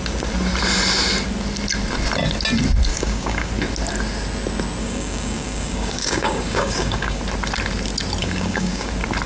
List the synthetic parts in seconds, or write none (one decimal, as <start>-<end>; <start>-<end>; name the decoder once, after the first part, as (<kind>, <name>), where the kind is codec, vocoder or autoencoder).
2.9-3.5 (codec, DAC); 4.8-7.2; 8.2-8.9